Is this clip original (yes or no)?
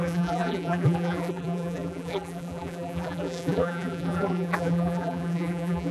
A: no